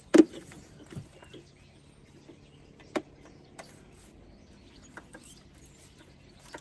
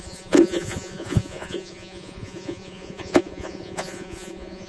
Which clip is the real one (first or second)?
first